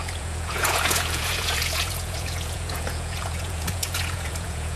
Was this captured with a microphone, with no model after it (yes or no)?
no